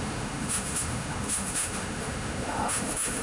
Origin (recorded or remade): remade